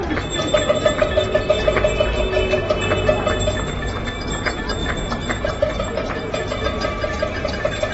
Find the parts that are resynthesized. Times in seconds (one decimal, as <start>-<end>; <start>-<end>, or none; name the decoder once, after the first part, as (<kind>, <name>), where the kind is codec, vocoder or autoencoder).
4.8-6.6 (vocoder, Vocos)